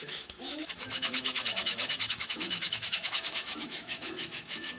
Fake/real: fake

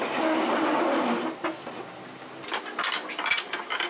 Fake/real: real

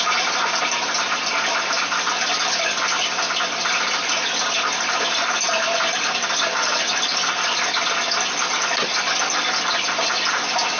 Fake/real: real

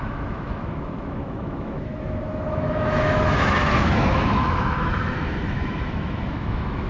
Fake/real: fake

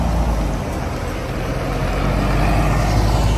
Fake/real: real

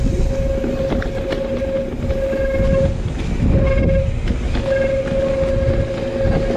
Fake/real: real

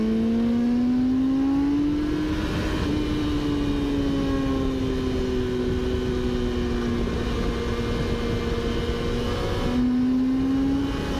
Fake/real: real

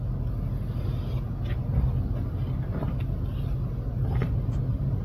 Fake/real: real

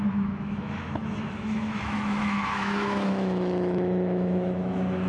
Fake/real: fake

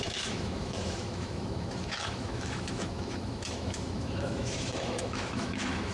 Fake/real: fake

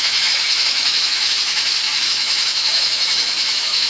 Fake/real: fake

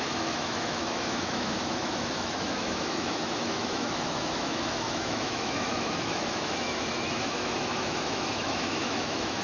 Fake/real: fake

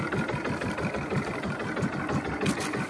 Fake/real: real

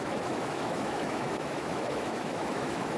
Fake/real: fake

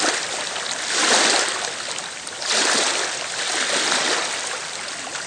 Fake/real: real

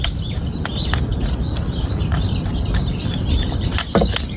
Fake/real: real